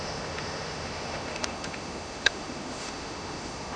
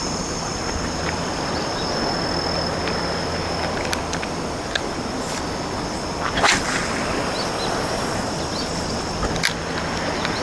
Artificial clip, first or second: first